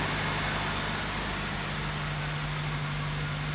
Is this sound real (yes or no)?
yes